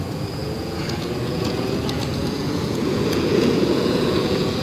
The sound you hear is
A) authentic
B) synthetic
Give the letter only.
B